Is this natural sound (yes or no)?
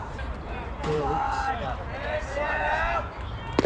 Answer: no